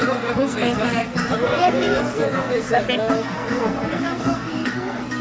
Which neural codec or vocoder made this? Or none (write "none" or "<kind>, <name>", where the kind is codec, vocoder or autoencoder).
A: codec, SNAC